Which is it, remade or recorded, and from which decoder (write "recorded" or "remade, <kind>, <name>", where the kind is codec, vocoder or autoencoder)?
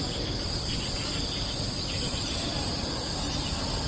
recorded